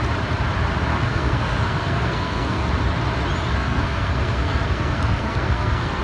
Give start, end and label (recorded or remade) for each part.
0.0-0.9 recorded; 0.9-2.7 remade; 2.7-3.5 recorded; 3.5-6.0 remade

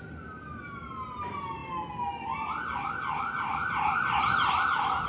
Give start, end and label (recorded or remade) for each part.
0.0-5.1 recorded

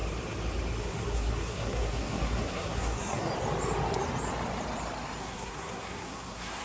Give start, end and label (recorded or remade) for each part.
0.0-0.8 recorded; 0.8-3.3 remade; 3.3-5.2 recorded; 5.2-6.6 remade

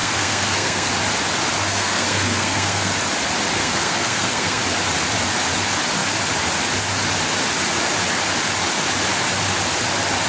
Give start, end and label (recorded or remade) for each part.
0.0-0.9 remade; 0.9-1.7 recorded; 1.7-2.9 remade; 2.9-3.6 recorded; 3.6-4.6 remade; 4.6-10.3 recorded